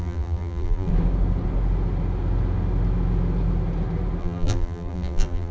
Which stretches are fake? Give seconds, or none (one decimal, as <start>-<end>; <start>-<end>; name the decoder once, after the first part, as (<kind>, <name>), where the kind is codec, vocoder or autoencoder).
0.0-0.9 (vocoder, BigVGAN v2); 4.2-5.5